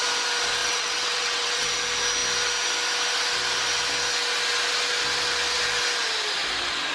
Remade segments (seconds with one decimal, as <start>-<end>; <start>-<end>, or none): 0.6-1.7